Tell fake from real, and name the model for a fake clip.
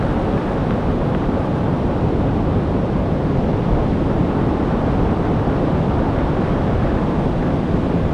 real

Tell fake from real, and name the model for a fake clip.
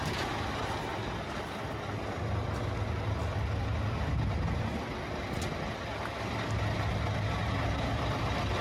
real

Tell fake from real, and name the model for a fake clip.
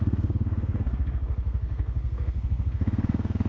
fake, codec, SNAC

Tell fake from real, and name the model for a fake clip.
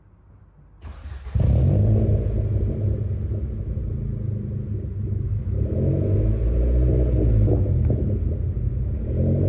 real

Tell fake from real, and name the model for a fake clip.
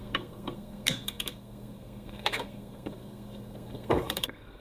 fake, codec, SNAC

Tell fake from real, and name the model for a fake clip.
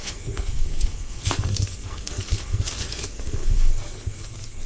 fake, codec, SNAC